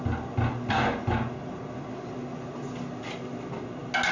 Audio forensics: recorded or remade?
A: recorded